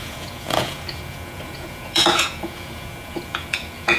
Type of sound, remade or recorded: remade